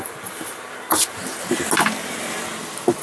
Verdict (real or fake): real